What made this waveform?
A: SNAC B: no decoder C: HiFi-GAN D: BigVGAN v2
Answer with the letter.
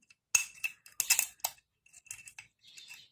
B